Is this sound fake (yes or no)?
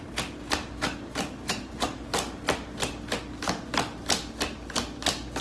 no